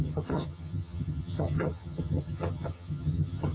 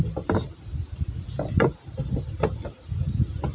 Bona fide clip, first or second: second